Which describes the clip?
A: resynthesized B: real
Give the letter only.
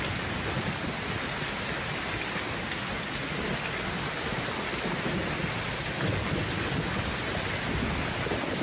B